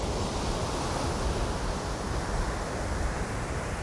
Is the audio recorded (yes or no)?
yes